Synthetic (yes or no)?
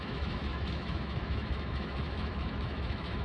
yes